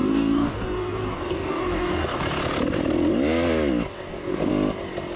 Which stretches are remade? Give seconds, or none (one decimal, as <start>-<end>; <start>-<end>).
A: 0.0-2.2; 3.9-4.5